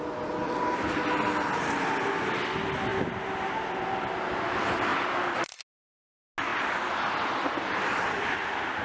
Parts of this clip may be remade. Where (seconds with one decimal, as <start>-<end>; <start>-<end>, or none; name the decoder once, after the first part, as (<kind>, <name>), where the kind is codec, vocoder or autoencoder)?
none